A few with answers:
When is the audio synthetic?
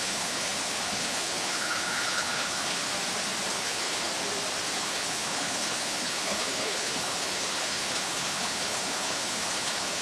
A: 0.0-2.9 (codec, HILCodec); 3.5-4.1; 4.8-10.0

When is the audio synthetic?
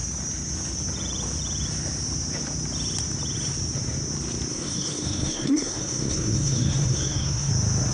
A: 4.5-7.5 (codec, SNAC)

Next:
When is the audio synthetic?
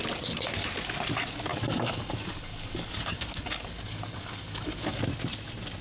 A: 1.5-5.0 (codec, DAC)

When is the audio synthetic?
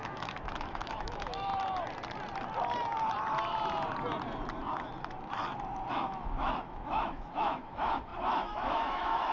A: 0.0-1.5 (autoencoder, DAC-VAE); 5.9-9.3